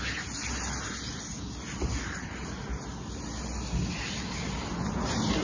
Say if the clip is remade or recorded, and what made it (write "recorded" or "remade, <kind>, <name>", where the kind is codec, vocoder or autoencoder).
recorded